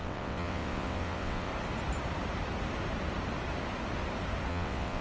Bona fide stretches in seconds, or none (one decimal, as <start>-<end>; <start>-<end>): 1.5-4.5